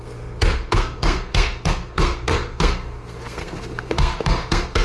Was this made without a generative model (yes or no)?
no